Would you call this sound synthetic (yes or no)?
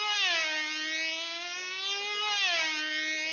no